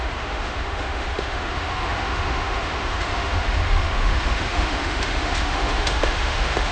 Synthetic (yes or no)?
yes